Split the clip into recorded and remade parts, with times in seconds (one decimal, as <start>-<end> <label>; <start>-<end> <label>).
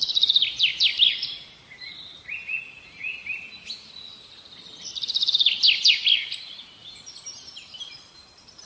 0.0-8.7 recorded